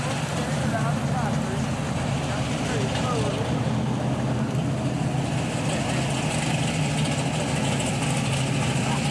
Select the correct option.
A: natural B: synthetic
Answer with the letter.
A